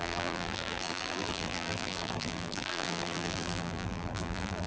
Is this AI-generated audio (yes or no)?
yes